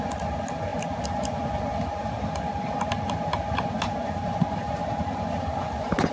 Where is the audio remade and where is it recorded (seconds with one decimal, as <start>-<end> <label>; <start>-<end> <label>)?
0.0-2.0 recorded; 2.0-6.1 remade